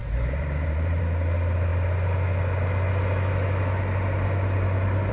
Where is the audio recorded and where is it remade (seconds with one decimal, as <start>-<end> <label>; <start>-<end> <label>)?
0.0-1.0 remade; 1.0-5.1 recorded